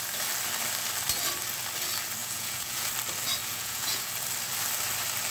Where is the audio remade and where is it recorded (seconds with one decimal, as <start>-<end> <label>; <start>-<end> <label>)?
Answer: 0.0-2.2 recorded; 2.2-2.9 remade; 2.9-3.4 recorded; 3.4-4.1 remade; 4.1-5.3 recorded